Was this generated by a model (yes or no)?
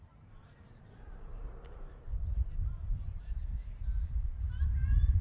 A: yes